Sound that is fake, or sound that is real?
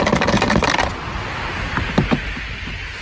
real